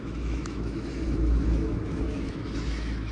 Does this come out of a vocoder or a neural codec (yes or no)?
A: yes